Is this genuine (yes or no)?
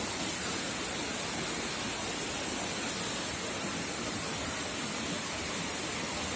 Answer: yes